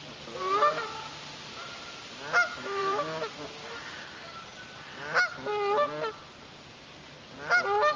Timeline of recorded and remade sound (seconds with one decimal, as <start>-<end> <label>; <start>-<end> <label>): 0.0-2.8 recorded; 2.8-3.9 remade; 3.9-8.0 recorded